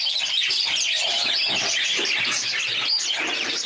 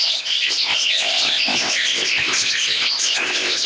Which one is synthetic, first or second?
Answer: second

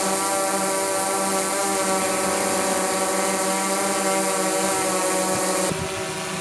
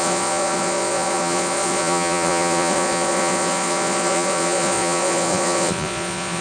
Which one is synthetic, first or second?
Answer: second